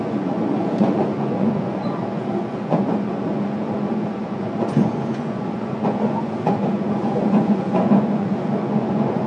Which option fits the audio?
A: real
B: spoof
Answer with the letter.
B